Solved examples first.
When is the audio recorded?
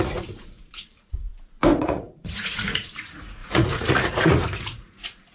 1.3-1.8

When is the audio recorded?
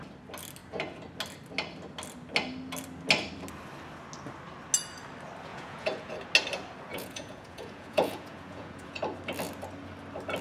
0.0-5.5; 6.1-6.9; 9.0-10.4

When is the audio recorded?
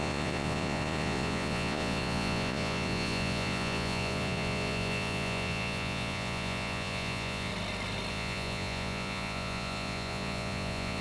7.5-8.1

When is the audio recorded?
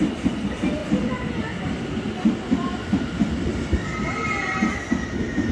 0.0-5.5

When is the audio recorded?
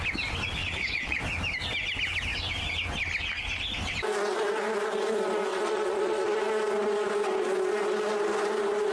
0.0-0.6; 1.2-5.5; 6.4-8.9